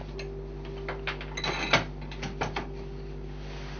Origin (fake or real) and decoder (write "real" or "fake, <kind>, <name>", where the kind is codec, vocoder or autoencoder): real